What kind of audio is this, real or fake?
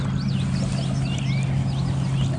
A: real